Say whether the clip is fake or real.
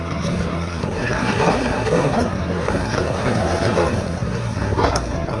fake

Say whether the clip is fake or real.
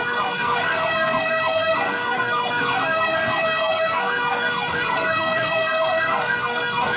fake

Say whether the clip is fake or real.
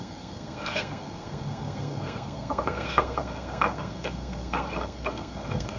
fake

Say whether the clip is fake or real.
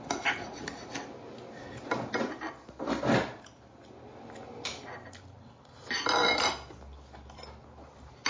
real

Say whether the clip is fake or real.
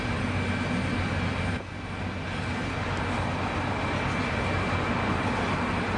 real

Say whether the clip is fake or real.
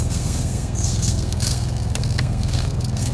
fake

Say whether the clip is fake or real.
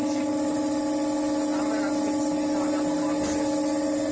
real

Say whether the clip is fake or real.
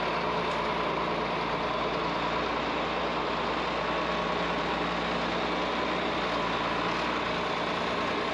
real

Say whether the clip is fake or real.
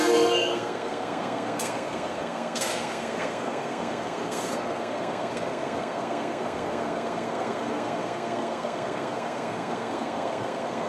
fake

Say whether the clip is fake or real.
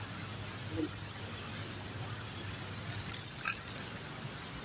real